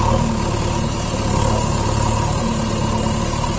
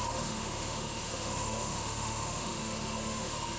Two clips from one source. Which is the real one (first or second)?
first